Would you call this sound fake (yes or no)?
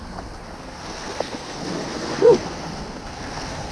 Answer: yes